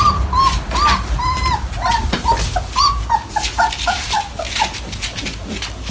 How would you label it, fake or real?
real